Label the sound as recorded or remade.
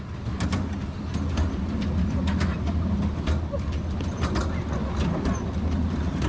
recorded